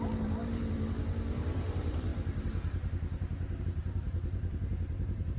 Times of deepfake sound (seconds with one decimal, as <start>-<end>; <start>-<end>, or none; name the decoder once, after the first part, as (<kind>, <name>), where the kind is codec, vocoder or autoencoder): 0.0-2.1 (vocoder, BigVGAN v2); 3.6-5.4